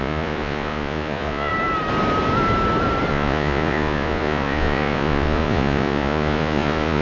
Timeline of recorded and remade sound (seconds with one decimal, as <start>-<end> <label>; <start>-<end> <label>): 0.0-1.5 remade; 1.5-3.1 recorded; 3.1-7.0 remade